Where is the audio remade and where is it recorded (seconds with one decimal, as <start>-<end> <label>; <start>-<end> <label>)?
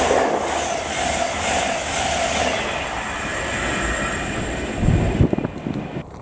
0.0-6.2 recorded